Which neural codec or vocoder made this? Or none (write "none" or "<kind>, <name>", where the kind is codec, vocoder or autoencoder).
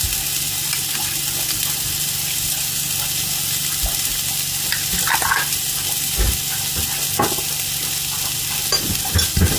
none